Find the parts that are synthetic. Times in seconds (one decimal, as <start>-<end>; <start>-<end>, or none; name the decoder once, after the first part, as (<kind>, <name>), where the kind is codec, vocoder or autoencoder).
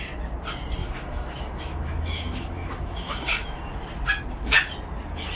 0.8-3.6 (autoencoder, DAC-VAE)